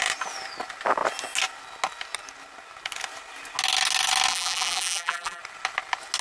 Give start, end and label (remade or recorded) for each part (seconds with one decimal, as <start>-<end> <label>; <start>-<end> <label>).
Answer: 0.0-4.3 recorded; 4.3-5.4 remade; 5.4-6.2 recorded

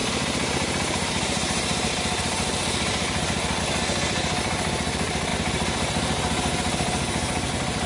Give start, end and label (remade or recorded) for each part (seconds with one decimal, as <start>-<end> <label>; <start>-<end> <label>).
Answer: 0.0-3.6 remade; 3.6-7.9 recorded

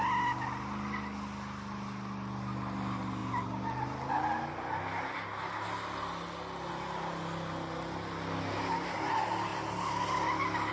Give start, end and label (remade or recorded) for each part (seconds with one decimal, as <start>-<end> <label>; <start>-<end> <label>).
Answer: 0.0-10.7 recorded

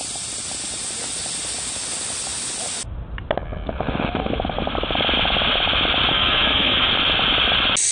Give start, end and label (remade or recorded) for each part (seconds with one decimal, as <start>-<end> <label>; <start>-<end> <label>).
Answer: 0.0-6.1 recorded; 6.1-6.9 remade; 6.9-7.9 recorded

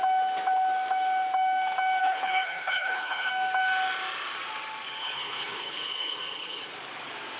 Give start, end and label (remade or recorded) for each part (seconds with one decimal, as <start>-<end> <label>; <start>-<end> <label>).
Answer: 0.0-2.0 recorded; 2.0-3.3 remade; 3.3-5.0 recorded; 5.0-6.7 remade; 6.7-7.4 recorded